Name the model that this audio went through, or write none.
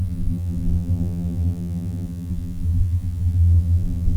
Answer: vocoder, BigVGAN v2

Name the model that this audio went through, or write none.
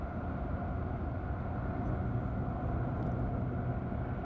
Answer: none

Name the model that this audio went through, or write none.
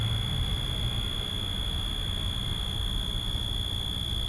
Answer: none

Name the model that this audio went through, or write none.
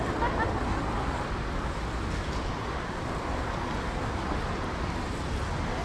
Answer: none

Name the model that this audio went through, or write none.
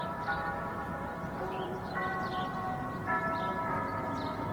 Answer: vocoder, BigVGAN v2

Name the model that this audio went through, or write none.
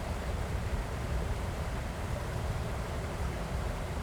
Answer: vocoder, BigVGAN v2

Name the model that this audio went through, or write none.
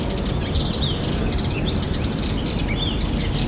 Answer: none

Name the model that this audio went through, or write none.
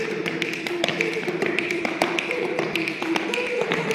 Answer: vocoder, BigVGAN v2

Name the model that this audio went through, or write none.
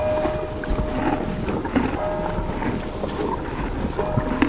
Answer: none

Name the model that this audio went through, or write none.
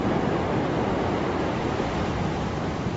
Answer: vocoder, BigVGAN v2